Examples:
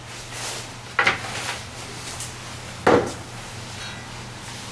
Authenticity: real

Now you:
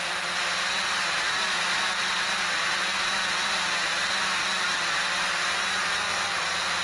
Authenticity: fake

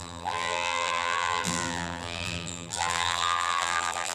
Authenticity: fake